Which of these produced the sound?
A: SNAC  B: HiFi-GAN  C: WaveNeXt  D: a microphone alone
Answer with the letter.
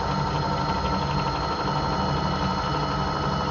D